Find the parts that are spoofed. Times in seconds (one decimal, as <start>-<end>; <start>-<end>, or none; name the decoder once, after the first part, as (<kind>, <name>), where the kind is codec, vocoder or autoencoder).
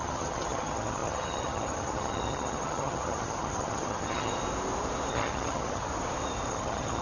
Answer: 0.0-4.3 (vocoder, HiFi-GAN); 5.1-5.9; 6.5-7.0